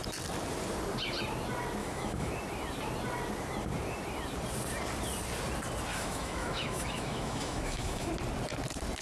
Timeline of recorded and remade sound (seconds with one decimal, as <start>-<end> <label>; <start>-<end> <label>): 0.0-1.8 recorded; 1.8-2.3 remade; 2.3-5.9 recorded; 5.9-8.1 remade; 8.1-9.0 recorded